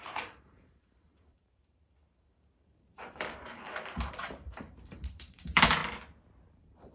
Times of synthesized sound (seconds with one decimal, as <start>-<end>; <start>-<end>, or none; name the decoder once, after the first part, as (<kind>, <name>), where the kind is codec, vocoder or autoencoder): 0.0-5.8 (vocoder, BigVGAN v2); 6.5-6.9